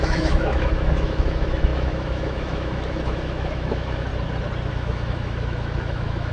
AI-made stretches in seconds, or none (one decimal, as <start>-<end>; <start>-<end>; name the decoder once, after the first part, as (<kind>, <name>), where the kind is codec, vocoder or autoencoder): 0.0-4.1 (autoencoder, DAC-VAE); 4.7-6.3